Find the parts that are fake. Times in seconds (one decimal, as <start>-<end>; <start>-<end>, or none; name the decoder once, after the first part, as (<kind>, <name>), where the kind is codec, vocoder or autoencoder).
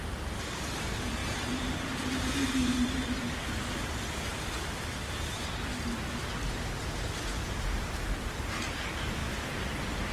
1.2-3.1 (vocoder, BigVGAN v2); 4.3-6.2